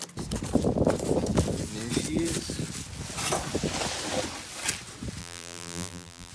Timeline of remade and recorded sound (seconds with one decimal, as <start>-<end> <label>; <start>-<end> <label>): 0.0-5.2 recorded; 5.2-6.3 remade